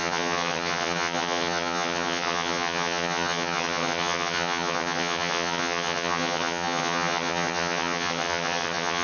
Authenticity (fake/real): fake